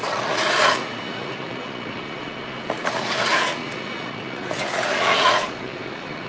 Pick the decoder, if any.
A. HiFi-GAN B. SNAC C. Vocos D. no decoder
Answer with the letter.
C